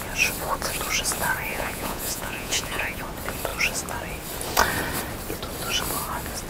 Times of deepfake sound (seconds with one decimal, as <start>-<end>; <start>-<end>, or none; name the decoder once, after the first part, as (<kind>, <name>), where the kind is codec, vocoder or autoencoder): 1.5-3.0 (vocoder, Vocos)